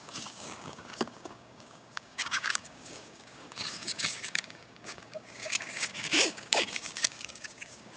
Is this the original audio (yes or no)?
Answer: no